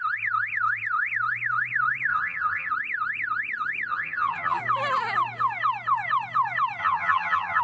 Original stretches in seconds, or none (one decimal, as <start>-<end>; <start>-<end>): 0.0-2.1; 2.7-3.9; 4.6-6.8

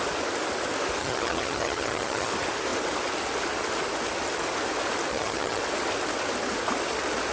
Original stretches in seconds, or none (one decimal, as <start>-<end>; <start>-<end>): 0.0-1.0; 2.3-5.1; 5.6-7.3

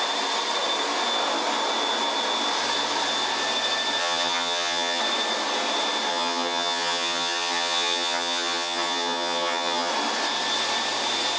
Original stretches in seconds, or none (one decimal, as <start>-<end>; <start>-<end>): 0.0-4.0; 5.0-6.1; 9.9-11.4

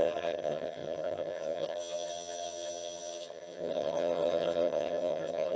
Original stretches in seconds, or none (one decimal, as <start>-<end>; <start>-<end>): none

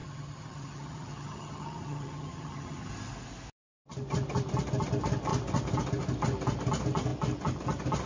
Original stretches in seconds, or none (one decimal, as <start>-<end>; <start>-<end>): 2.9-8.1

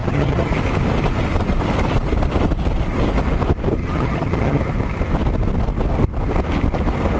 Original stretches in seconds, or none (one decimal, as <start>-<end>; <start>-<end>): 0.5-3.8; 4.6-7.2

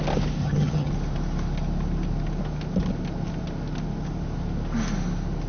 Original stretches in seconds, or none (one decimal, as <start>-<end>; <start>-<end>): 0.0-0.4; 0.9-5.5